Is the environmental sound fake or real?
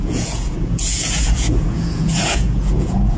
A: fake